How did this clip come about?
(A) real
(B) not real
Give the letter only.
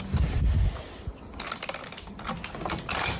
A